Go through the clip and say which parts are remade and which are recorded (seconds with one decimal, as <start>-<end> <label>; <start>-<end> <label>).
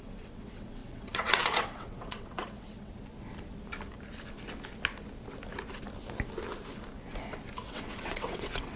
0.0-2.9 remade; 2.9-7.6 recorded; 7.6-8.8 remade